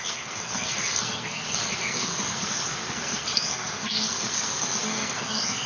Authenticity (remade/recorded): remade